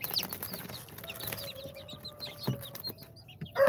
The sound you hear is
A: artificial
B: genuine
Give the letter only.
B